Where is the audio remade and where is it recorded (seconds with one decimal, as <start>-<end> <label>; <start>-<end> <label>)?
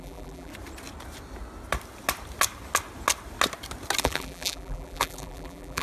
0.0-0.5 remade; 0.5-4.0 recorded; 4.0-5.8 remade